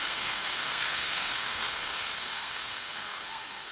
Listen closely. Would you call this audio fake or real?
fake